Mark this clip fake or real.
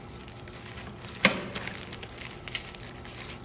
real